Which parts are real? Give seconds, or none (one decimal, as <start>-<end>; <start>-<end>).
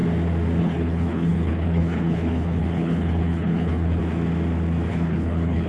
0.0-0.6; 4.0-4.9